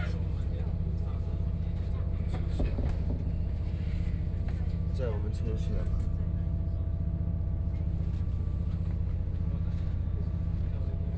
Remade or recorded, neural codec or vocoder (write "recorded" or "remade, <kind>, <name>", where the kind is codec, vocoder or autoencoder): recorded